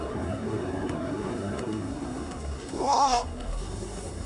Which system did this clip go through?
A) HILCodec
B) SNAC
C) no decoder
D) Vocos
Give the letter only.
B